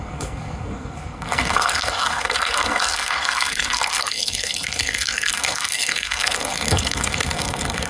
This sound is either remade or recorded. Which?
remade